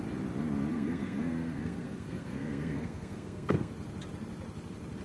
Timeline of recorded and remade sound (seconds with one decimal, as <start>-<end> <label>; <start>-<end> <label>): 0.0-0.7 recorded; 0.7-3.7 remade; 3.7-5.0 recorded